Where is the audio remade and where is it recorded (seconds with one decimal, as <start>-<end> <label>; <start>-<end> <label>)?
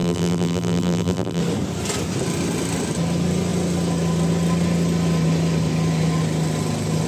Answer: 0.0-1.4 remade; 1.4-7.1 recorded